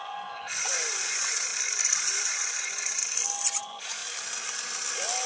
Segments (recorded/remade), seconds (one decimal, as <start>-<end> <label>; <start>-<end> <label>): 0.0-1.5 remade; 1.5-2.2 recorded; 2.2-3.0 remade; 3.0-3.6 recorded; 3.6-4.0 remade; 4.0-5.3 recorded